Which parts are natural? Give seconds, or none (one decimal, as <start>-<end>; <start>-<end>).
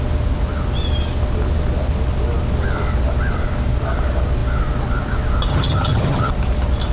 0.0-5.5; 6.3-6.9